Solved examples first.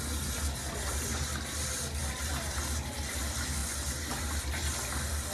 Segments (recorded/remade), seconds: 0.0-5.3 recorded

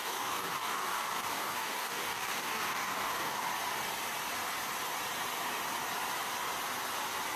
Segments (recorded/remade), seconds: 0.0-3.5 remade; 3.5-7.4 recorded

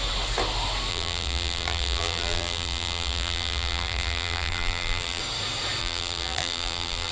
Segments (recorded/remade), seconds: 0.0-0.9 recorded; 0.9-5.2 remade; 5.2-5.8 recorded; 5.8-7.1 remade

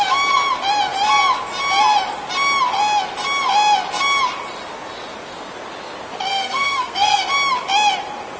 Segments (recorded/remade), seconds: 0.0-6.3 recorded; 6.3-7.3 remade; 7.3-8.4 recorded

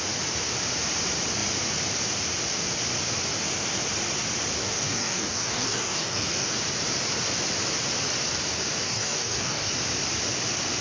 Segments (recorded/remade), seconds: 0.0-4.6 recorded; 4.6-6.6 remade; 6.6-8.9 recorded; 8.9-9.7 remade; 9.7-10.8 recorded